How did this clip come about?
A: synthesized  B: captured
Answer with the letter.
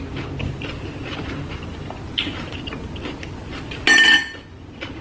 B